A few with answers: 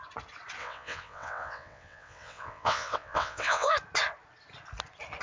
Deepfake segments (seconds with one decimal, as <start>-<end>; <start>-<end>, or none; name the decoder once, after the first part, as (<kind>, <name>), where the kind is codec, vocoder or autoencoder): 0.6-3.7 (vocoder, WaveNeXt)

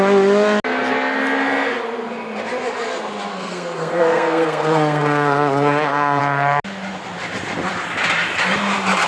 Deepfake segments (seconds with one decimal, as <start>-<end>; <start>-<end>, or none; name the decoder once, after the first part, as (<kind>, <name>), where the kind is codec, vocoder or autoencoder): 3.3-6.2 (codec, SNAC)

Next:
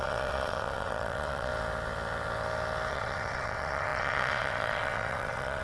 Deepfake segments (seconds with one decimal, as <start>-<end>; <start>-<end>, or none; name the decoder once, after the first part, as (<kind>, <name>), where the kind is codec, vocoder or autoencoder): 0.0-1.5 (vocoder, WaveNeXt); 2.9-5.6

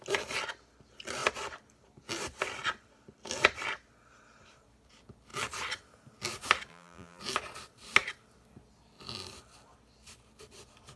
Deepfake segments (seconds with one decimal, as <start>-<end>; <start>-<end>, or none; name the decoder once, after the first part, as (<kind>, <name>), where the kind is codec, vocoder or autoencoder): 6.7-7.2 (vocoder, BigVGAN v2)

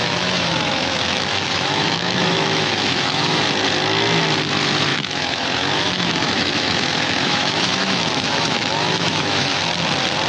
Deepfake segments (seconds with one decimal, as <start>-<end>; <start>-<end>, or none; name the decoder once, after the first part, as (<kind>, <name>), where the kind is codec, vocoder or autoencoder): 0.0-3.4 (autoencoder, DAC-VAE); 4.9-9.6

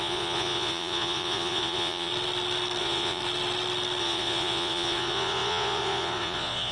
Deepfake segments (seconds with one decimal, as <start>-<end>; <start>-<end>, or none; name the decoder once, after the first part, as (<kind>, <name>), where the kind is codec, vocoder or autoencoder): 0.0-2.1 (vocoder, Vocos); 2.8-3.2; 4.0-6.7

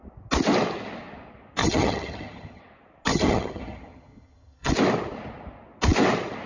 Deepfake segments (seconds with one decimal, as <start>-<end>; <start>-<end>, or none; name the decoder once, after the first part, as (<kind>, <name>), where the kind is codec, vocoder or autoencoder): 1.6-2.6 (vocoder, HiFi-GAN); 3.1-4.7

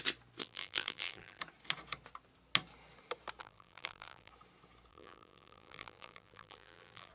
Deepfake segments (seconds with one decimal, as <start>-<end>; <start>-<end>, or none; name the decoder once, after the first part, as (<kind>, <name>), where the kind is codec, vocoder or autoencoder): 0.4-1.4 (vocoder, BigVGAN v2); 3.4-4.3; 4.9-7.1